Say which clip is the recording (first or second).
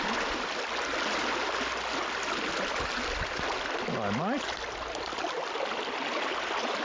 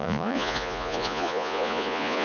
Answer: first